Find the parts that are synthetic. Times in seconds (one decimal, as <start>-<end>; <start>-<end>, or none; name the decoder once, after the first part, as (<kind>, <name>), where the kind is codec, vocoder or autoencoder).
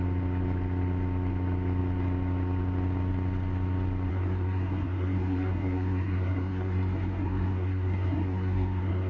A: 4.1-9.1 (codec, SNAC)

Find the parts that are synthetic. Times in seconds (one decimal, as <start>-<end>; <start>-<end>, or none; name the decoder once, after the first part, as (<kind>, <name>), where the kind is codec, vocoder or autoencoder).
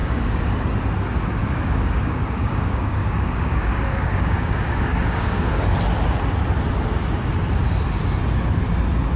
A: 0.0-0.5 (codec, DAC); 1.4-5.5